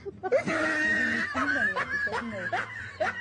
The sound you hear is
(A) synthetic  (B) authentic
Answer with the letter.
B